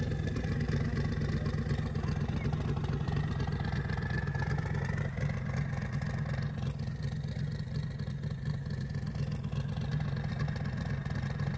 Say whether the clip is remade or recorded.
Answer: recorded